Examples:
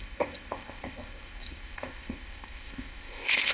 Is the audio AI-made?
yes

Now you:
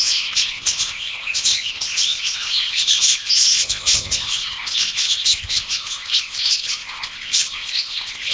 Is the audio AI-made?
yes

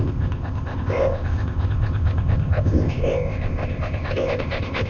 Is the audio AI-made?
yes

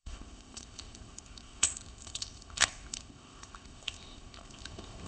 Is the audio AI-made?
yes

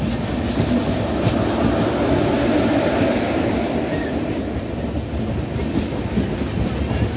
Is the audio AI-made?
no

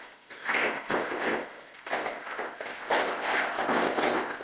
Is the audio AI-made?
yes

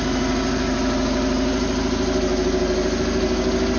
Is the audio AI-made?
no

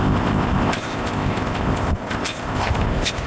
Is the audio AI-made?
yes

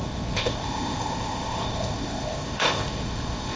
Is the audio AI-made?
yes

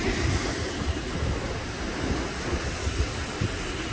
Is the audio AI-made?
no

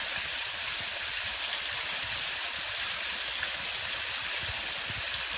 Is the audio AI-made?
no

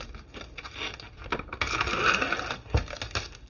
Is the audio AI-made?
no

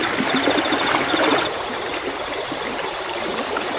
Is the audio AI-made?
no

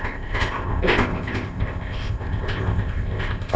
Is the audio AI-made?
yes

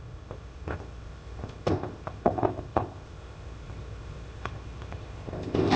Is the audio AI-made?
yes